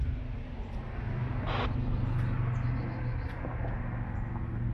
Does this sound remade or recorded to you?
recorded